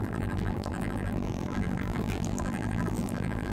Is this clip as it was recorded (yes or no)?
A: no